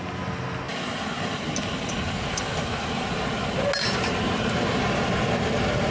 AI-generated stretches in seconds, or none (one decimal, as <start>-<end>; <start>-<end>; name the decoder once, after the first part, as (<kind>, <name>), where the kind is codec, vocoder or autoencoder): none